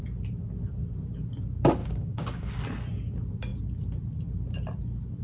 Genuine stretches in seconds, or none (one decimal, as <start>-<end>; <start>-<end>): 0.0-1.8; 2.5-5.2